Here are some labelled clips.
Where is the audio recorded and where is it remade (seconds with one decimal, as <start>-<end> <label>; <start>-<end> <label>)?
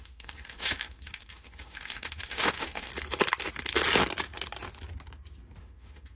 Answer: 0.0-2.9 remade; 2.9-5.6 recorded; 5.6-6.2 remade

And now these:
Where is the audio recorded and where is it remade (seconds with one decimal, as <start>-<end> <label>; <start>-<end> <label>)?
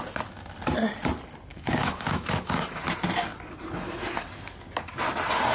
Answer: 0.0-1.5 recorded; 1.5-2.8 remade; 2.8-5.5 recorded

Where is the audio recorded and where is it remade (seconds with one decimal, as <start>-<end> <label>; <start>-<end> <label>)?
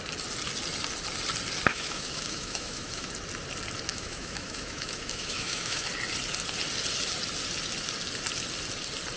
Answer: 0.0-1.7 recorded; 1.7-3.1 remade; 3.1-3.9 recorded; 3.9-5.9 remade; 5.9-9.2 recorded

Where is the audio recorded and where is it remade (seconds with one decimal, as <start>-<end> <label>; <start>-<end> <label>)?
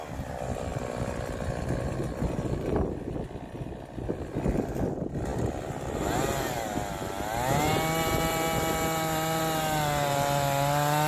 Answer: 0.0-11.1 recorded